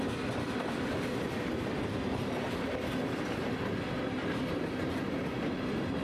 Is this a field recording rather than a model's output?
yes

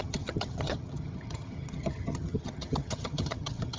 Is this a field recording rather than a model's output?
no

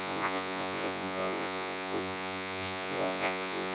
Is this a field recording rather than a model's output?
no